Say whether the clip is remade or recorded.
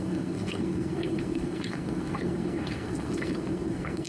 remade